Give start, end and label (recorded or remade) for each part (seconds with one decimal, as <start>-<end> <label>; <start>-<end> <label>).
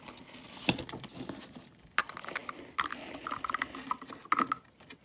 0.0-5.0 recorded